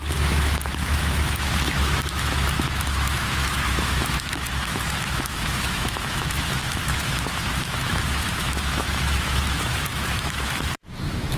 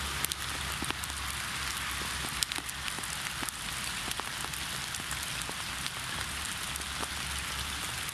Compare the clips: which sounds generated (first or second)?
first